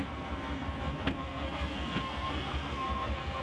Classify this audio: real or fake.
fake